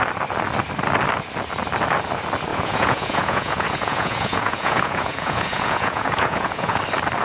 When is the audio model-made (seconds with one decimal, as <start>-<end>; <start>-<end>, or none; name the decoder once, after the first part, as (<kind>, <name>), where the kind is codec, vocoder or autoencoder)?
2.5-6.8 (vocoder, Vocos)